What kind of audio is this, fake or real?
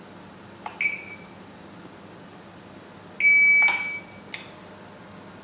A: real